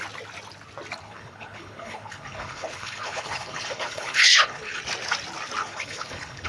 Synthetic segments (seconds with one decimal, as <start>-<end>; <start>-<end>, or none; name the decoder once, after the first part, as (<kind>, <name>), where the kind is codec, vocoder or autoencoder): 1.0-4.8 (codec, HILCodec); 5.6-6.5